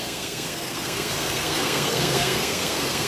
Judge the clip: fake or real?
fake